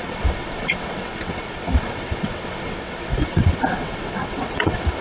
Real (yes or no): no